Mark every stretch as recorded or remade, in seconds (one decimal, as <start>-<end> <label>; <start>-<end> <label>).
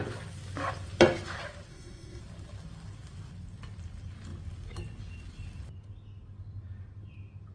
0.0-1.7 recorded; 1.7-2.2 remade; 2.2-7.5 recorded